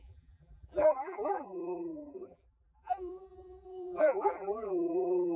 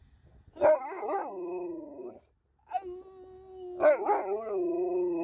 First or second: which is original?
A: second